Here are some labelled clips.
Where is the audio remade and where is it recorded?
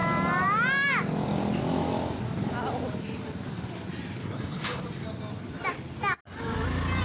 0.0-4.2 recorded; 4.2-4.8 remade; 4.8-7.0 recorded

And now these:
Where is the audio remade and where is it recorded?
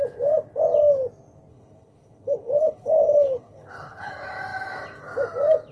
0.0-1.5 recorded; 1.5-4.1 remade; 4.1-5.7 recorded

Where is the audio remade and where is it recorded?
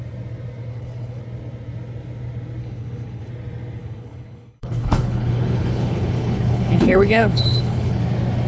0.0-0.7 recorded; 0.7-1.2 remade; 1.2-2.6 recorded; 2.6-3.3 remade; 3.3-3.8 recorded; 3.8-8.0 remade; 8.0-8.5 recorded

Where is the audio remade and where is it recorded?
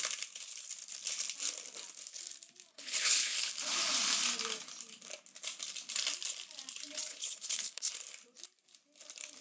0.0-2.7 recorded; 2.7-3.5 remade; 3.5-7.1 recorded; 7.1-7.9 remade; 7.9-9.4 recorded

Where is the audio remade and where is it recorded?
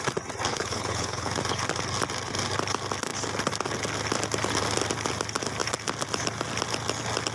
0.0-0.5 recorded; 0.5-1.3 remade; 1.3-7.3 recorded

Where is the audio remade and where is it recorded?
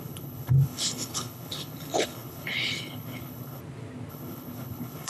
0.0-3.6 remade; 3.6-4.1 recorded; 4.1-5.1 remade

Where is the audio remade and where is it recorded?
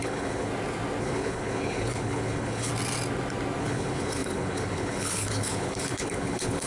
0.0-0.5 remade; 0.5-1.0 recorded; 1.0-2.7 remade; 2.7-3.6 recorded; 3.6-6.7 remade